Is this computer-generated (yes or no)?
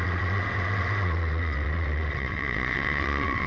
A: yes